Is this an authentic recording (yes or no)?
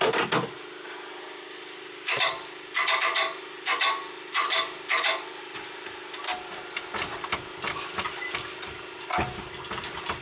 yes